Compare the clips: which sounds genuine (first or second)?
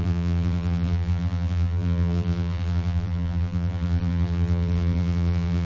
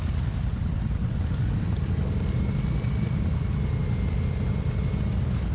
second